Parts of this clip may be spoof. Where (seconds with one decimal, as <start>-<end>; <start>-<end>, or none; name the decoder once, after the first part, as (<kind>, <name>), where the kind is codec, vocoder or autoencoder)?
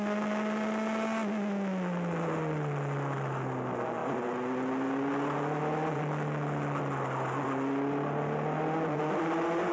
none